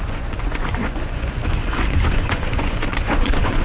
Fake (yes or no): yes